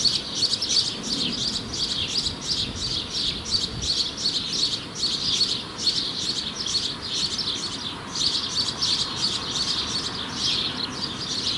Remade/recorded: recorded